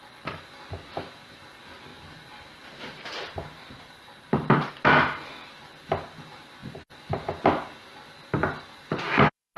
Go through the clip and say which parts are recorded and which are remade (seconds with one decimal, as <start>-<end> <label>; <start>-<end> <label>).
0.0-1.9 recorded; 1.9-4.7 remade; 4.7-9.6 recorded